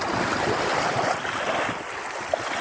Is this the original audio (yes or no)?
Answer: yes